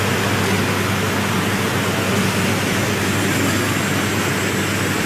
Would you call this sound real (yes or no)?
yes